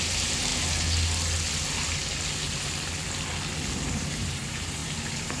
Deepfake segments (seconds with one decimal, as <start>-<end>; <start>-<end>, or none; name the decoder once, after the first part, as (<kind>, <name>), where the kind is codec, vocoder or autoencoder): 0.0-0.5 (vocoder, BigVGAN v2); 3.7-5.4